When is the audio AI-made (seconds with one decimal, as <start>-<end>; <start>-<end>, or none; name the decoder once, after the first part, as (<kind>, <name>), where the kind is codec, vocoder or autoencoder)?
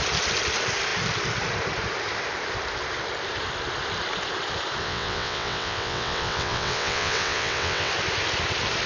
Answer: 4.8-7.9 (vocoder, WaveNeXt)